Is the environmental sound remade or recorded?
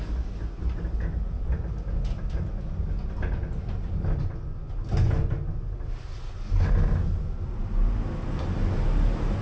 recorded